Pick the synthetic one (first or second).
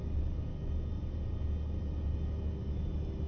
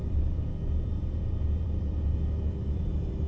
second